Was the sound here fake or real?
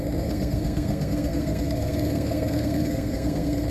fake